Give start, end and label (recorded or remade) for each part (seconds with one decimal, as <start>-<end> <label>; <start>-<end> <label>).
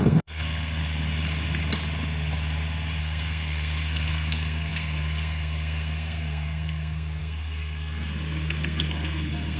0.0-0.8 remade; 0.8-3.0 recorded; 3.0-9.6 remade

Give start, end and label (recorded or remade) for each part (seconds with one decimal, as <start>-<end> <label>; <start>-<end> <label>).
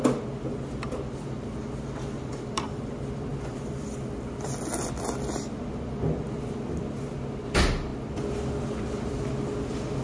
0.0-10.0 recorded